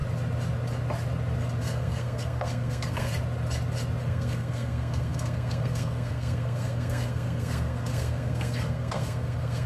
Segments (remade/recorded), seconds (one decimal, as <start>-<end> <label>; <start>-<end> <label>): 0.0-1.6 recorded; 1.6-3.1 remade; 3.1-4.0 recorded; 4.0-9.7 remade